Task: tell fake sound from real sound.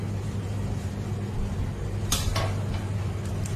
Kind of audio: real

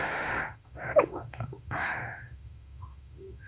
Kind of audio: fake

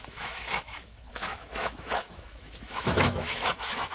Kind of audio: fake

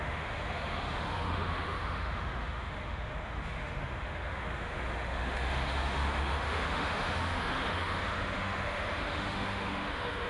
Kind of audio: fake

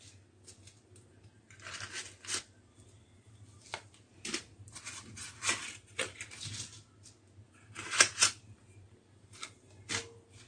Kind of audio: real